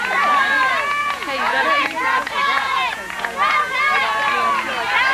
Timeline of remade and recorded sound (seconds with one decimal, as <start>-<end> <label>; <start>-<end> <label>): 0.0-1.0 recorded; 1.0-3.7 remade; 3.7-5.1 recorded